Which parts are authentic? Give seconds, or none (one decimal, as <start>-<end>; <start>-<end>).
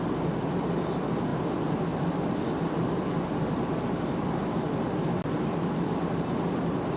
0.0-7.0